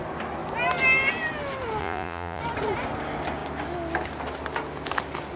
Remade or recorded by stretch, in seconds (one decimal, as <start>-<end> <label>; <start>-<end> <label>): 0.0-1.8 recorded; 1.8-2.4 remade; 2.4-5.4 recorded